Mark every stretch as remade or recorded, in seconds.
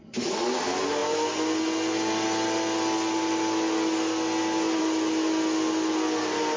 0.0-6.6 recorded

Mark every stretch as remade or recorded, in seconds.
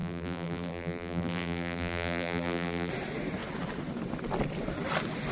0.0-2.9 remade; 2.9-5.3 recorded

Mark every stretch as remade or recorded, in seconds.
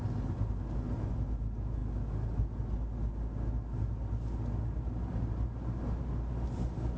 0.0-7.0 recorded